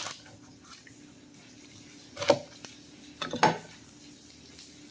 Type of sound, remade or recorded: recorded